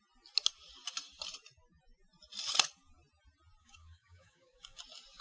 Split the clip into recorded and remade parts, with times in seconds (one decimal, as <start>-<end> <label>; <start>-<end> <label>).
0.0-3.6 recorded; 3.6-4.8 remade; 4.8-5.2 recorded